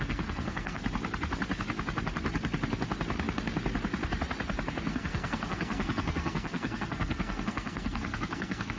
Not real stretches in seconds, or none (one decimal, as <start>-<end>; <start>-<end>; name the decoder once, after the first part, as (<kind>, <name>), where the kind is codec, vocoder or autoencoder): 0.0-0.8 (codec, SNAC); 4.9-8.8